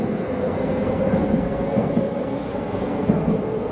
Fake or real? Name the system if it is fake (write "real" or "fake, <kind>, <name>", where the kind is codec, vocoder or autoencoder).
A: fake, codec, SNAC